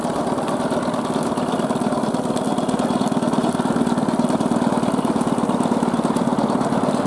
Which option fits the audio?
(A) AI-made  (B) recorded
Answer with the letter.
B